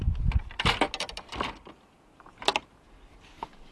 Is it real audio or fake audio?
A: real